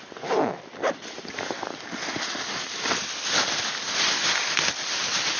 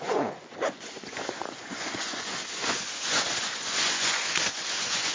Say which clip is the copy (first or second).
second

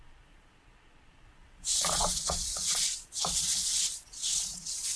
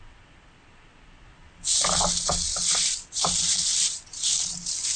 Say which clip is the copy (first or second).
first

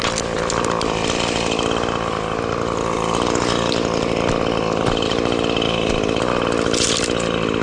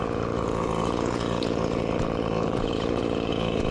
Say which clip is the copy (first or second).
second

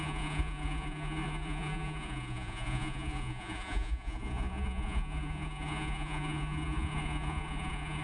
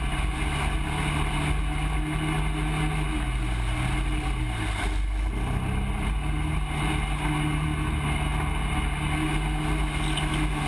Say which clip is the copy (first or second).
first